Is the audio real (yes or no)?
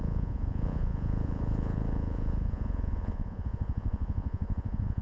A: no